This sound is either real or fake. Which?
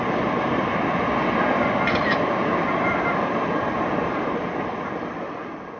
real